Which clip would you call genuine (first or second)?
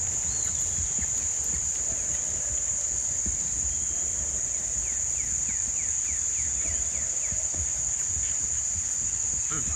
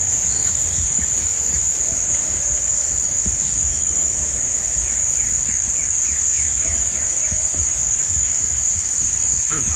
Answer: first